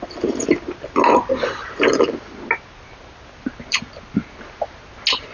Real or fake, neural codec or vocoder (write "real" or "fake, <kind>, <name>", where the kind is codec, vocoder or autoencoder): real